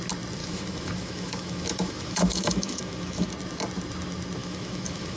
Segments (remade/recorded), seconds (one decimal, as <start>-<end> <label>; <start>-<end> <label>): 0.0-0.4 recorded; 0.4-3.3 remade; 3.3-4.4 recorded; 4.4-5.2 remade